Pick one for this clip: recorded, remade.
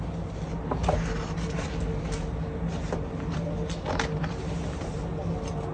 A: recorded